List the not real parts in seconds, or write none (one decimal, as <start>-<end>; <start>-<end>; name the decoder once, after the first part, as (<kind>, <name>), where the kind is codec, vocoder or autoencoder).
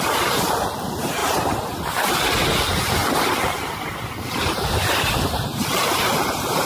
none